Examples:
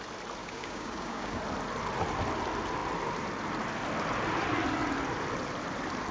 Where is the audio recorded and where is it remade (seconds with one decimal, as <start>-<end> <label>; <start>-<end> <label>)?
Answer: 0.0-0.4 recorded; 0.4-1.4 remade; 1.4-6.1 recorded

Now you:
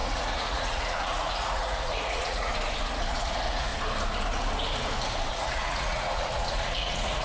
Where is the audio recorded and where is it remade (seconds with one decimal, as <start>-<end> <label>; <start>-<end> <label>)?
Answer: 0.0-2.5 remade; 2.5-3.1 recorded; 3.1-3.7 remade; 3.7-5.3 recorded; 5.3-7.2 remade

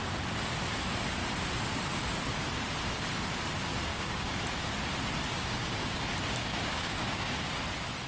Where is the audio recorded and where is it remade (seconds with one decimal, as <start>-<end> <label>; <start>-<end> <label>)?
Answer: 0.0-3.9 recorded; 3.9-4.4 remade; 4.4-5.4 recorded; 5.4-6.0 remade; 6.0-6.4 recorded; 6.4-7.3 remade; 7.3-8.1 recorded

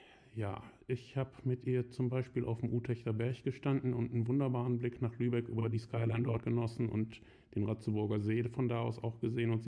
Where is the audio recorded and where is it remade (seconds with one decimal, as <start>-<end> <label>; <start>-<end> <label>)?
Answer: 0.0-5.6 recorded; 5.6-6.4 remade; 6.4-9.7 recorded

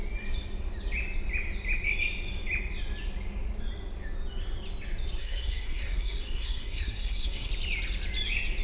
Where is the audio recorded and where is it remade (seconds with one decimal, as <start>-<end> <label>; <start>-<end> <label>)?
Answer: 0.0-5.2 recorded; 5.2-7.5 remade; 7.5-8.6 recorded

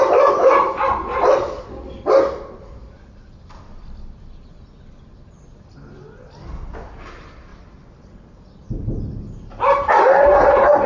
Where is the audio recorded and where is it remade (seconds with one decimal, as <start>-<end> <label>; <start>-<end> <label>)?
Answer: 0.0-10.9 recorded